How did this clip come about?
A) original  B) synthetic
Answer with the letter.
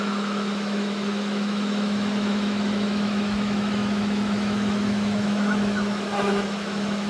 B